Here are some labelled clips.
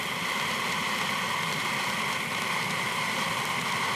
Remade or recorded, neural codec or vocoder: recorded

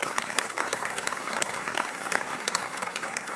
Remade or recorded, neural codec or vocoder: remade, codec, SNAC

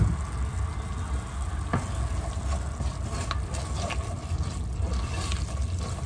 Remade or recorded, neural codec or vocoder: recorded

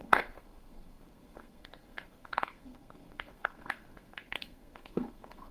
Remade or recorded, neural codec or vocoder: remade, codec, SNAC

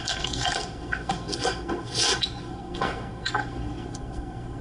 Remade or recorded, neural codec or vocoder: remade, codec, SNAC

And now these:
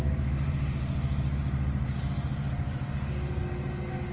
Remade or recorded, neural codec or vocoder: recorded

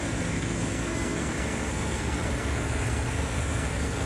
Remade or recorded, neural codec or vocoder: remade, codec, SNAC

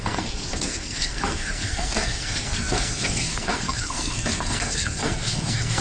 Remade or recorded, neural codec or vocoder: remade, codec, SNAC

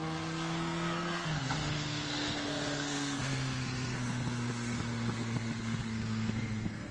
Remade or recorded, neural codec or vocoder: remade, codec, SNAC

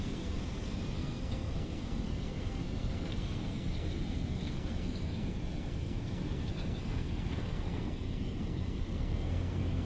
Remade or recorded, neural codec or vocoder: remade, codec, SNAC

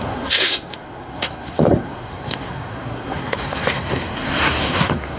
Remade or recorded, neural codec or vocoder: remade, codec, SNAC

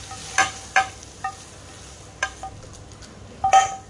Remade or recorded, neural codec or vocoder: recorded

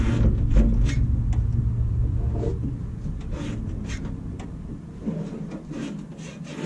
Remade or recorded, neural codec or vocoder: recorded